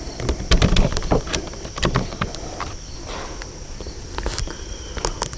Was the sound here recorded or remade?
recorded